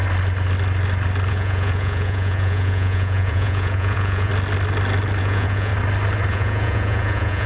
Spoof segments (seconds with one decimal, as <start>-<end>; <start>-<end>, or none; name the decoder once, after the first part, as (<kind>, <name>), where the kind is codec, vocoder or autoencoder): 1.3-4.3 (vocoder, Vocos); 5.2-5.7; 6.3-7.5

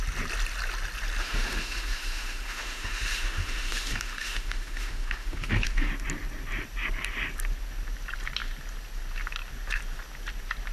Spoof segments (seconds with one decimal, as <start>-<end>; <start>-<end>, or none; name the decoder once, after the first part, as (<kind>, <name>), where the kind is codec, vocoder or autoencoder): 1.2-5.9 (autoencoder, DAC-VAE)

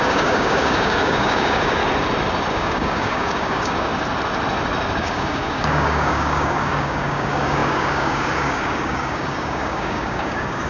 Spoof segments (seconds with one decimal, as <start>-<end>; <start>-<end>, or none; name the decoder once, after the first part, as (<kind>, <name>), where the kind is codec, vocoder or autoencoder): 0.0-1.8 (codec, DAC); 2.5-3.9; 5.0-10.7

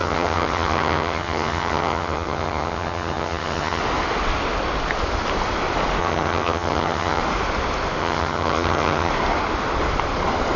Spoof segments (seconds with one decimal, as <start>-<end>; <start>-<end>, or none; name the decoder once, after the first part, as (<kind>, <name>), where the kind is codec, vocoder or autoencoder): 0.0-3.8 (vocoder, HiFi-GAN); 6.0-7.2; 8.0-9.1

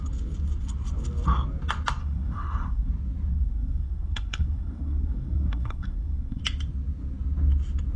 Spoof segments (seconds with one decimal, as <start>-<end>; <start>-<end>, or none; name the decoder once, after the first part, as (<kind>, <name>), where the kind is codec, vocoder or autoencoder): 2.0-2.9 (codec, SNAC); 3.3-6.4

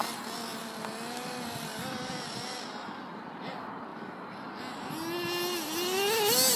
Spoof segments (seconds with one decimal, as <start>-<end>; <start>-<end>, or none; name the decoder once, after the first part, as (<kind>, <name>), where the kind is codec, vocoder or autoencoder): 0.5-2.1 (vocoder, BigVGAN v2); 3.9-4.9

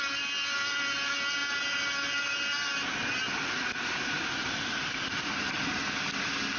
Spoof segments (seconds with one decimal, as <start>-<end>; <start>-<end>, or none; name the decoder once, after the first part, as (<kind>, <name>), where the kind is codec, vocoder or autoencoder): 4.4-5.5 (vocoder, BigVGAN v2)

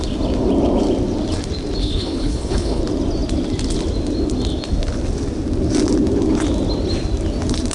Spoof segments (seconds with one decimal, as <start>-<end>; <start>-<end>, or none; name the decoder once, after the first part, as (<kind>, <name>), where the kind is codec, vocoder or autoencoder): 1.8-2.8 (codec, HILCodec)